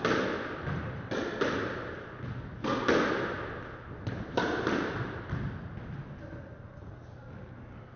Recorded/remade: recorded